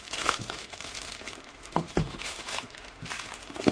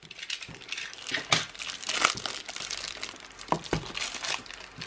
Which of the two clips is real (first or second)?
second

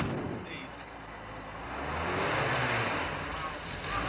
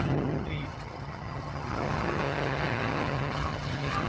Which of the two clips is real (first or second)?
first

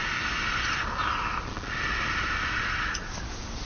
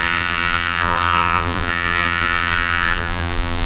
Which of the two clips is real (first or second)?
first